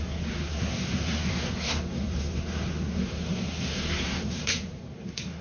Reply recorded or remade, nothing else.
remade